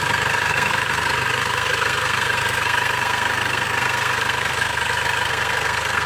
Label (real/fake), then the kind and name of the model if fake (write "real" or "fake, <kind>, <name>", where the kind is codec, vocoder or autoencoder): fake, codec, SNAC